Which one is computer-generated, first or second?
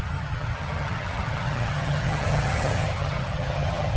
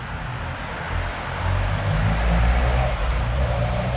first